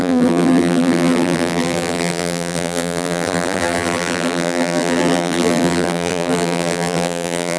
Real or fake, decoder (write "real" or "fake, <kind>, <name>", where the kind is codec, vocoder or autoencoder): fake, vocoder, BigVGAN v2